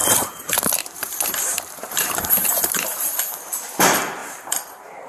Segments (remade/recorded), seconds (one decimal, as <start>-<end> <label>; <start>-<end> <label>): 0.0-3.1 remade; 3.1-4.2 recorded; 4.2-5.1 remade